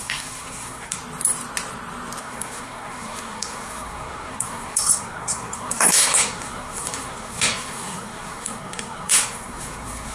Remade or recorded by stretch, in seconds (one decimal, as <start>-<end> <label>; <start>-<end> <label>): 0.0-1.0 remade; 1.0-2.2 recorded; 2.2-10.1 remade